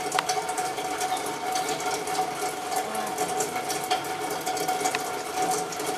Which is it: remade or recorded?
recorded